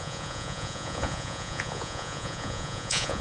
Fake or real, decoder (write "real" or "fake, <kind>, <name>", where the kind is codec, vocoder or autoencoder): fake, vocoder, Vocos